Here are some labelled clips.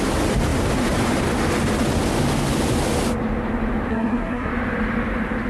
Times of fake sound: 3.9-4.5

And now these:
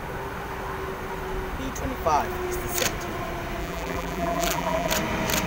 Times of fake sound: 3.6-4.9

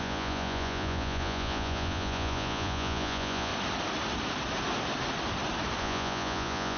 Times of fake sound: 0.0-3.5; 5.8-6.8

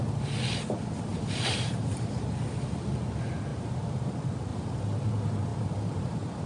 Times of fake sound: 1.1-2.1; 3.5-4.1; 4.5-5.1; 5.5-6.5

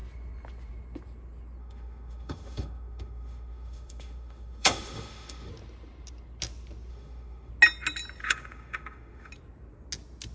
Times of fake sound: 1.6-5.5; 6.9-7.5; 8.2-9.3

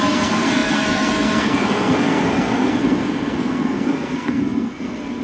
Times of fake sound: 0.0-5.2